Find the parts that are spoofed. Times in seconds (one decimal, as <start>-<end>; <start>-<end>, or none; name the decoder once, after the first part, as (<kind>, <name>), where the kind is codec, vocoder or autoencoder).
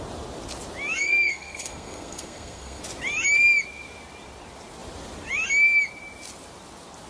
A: 1.0-2.8 (codec, SNAC)